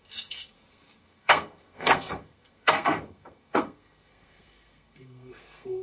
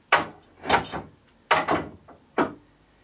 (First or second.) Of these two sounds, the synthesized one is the first